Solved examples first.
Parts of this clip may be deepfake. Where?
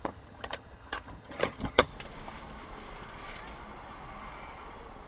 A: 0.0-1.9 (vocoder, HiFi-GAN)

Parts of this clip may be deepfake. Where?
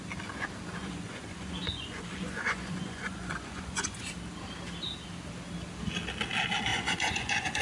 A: 0.8-4.1 (vocoder, Vocos); 6.7-7.6